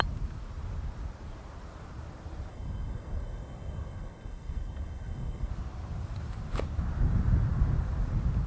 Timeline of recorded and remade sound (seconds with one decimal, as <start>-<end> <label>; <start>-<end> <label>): 0.0-2.5 recorded; 2.5-5.5 remade; 5.5-8.5 recorded